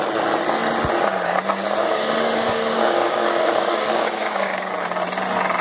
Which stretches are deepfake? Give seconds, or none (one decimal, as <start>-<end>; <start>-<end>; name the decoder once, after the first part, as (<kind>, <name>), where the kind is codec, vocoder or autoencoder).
1.8-4.7 (codec, DAC)

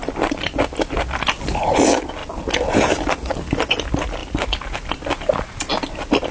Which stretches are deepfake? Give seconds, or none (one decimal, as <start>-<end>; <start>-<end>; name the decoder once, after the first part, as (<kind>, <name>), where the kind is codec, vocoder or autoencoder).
none